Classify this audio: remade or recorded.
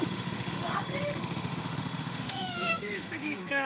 remade